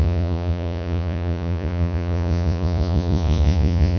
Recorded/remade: remade